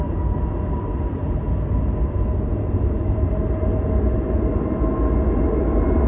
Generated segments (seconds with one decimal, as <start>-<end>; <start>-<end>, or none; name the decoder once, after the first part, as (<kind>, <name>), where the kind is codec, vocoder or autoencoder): none